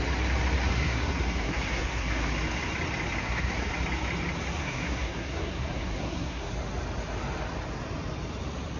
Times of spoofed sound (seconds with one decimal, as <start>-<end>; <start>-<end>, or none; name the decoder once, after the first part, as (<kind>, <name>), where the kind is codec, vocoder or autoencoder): 0.7-2.3 (codec, SNAC); 3.2-3.7; 4.6-6.5